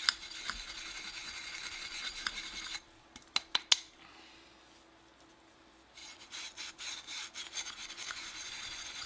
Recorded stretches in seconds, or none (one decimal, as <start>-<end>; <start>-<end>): 0.0-1.2; 2.3-6.0; 6.7-7.8